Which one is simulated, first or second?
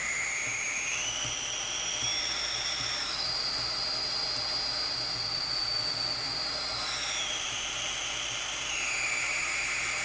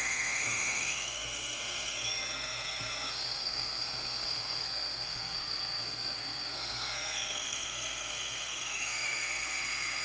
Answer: second